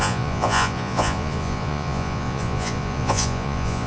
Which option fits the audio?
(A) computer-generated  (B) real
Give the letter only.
A